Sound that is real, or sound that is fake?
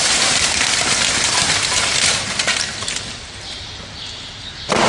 real